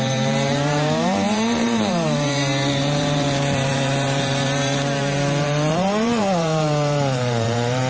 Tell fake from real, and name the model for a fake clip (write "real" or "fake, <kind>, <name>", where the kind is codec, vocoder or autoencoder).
fake, vocoder, BigVGAN v2